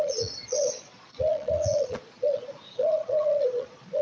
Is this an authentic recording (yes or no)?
no